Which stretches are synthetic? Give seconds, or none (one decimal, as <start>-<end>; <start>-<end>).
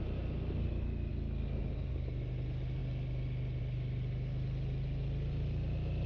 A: none